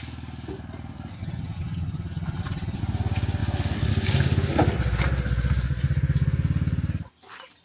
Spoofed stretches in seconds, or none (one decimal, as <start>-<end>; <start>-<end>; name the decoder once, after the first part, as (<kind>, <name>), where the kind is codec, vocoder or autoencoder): 1.1-2.8 (vocoder, HiFi-GAN)